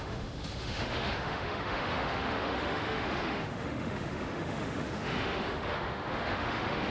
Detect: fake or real fake